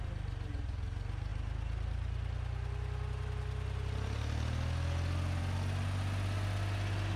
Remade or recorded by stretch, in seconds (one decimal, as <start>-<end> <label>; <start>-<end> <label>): 0.0-7.2 recorded